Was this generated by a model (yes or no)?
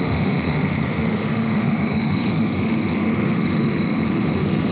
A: yes